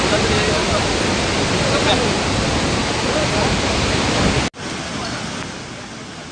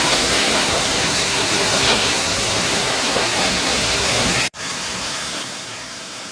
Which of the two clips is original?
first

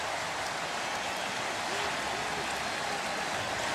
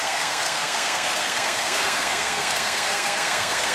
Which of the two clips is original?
first